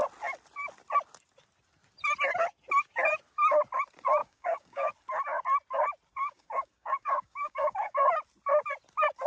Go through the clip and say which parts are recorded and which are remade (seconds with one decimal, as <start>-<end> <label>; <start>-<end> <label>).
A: 0.0-4.2 recorded; 4.2-4.9 remade; 4.9-6.2 recorded; 6.2-8.1 remade; 8.1-9.3 recorded